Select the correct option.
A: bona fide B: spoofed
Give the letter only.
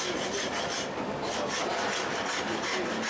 A